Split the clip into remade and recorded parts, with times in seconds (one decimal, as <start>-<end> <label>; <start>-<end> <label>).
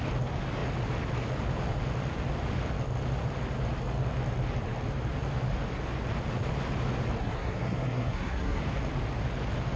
0.0-7.2 recorded; 7.2-8.6 remade; 8.6-9.8 recorded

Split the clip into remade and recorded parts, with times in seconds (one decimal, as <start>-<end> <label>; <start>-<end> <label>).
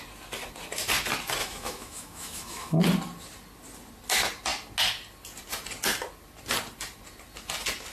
0.0-1.4 recorded; 1.4-2.8 remade; 2.8-7.9 recorded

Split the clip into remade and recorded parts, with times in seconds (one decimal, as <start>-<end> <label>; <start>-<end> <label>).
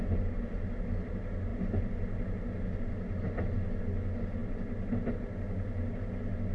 0.0-6.5 recorded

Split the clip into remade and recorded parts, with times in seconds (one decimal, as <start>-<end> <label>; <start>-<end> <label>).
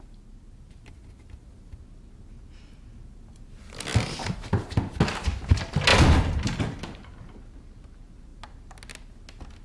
0.0-9.6 recorded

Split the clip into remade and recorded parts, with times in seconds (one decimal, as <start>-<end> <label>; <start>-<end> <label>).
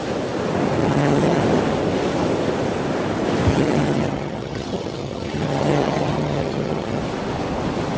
0.0-0.8 recorded; 0.8-1.4 remade; 1.4-3.5 recorded; 3.5-7.0 remade; 7.0-8.0 recorded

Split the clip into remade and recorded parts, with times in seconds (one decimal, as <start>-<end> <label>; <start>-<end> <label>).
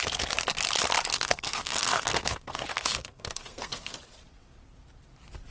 0.0-1.1 recorded; 1.1-3.9 remade; 3.9-5.5 recorded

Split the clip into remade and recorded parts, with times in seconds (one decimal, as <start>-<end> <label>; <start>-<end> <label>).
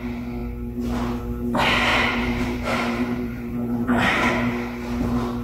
0.0-1.9 recorded; 1.9-4.3 remade; 4.3-5.4 recorded